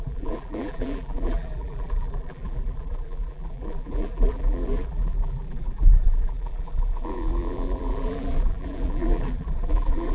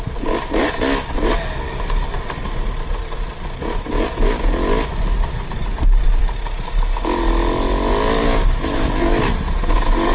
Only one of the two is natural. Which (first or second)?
second